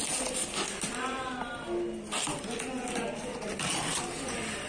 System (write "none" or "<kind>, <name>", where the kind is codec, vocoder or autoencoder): none